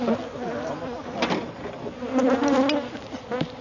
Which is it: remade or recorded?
recorded